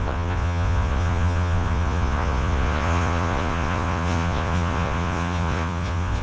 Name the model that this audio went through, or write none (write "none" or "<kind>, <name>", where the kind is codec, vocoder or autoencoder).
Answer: vocoder, Vocos